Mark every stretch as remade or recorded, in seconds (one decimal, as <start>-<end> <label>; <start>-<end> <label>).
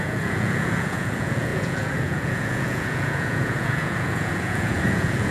0.0-5.3 remade